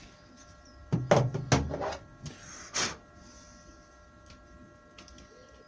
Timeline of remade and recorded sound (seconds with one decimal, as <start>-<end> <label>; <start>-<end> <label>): 0.0-5.7 recorded